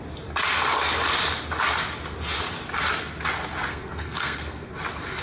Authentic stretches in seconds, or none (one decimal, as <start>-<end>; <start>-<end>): 0.0-3.7; 4.7-5.2